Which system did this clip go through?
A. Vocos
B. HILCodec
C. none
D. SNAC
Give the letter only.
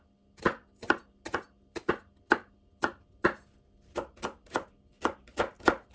C